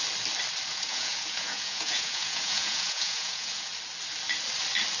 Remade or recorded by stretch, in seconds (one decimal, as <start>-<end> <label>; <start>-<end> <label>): 0.0-0.7 recorded; 0.7-3.7 remade; 3.7-5.0 recorded